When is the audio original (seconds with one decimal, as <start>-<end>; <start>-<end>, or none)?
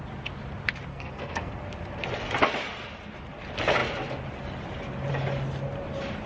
0.0-0.9; 1.5-6.3